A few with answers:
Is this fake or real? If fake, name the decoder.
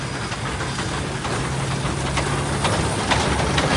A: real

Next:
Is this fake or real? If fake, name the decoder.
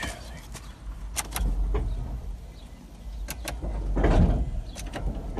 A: real